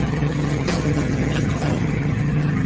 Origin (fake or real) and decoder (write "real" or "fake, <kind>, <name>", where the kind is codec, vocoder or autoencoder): fake, vocoder, HiFi-GAN